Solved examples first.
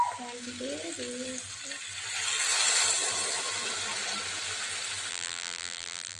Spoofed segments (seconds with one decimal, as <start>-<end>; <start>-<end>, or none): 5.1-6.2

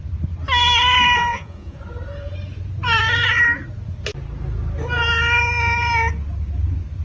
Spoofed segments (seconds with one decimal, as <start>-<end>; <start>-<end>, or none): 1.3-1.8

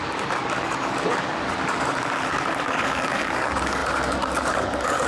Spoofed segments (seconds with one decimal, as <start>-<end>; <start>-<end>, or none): 0.0-5.1

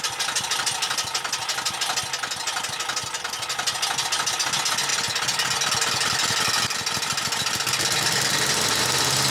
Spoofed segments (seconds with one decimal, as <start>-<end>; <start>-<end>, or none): none